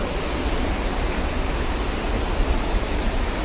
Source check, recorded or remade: recorded